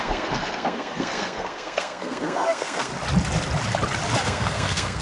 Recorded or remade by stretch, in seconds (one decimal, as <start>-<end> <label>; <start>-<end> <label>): 0.0-2.9 remade; 2.9-4.2 recorded; 4.2-5.0 remade